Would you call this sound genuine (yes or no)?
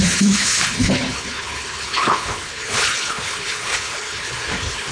no